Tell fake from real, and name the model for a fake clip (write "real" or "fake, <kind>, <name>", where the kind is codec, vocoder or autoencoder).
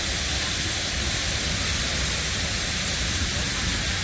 real